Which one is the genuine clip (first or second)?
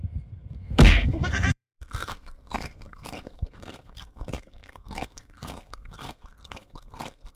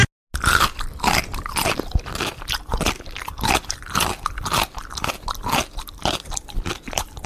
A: second